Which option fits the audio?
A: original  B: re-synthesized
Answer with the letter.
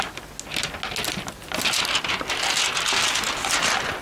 A